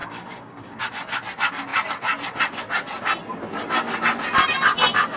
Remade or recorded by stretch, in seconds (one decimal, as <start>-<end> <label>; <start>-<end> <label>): 0.0-0.8 remade; 0.8-5.2 recorded